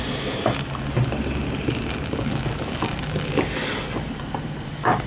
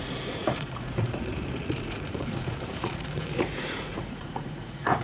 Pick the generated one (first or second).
second